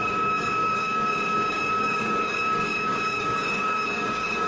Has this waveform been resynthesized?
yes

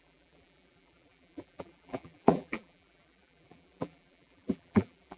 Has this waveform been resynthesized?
yes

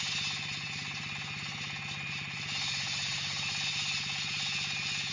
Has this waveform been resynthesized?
no